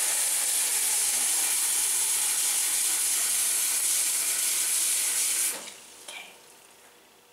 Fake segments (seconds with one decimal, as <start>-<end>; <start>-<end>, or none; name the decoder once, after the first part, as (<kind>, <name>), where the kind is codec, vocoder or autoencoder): none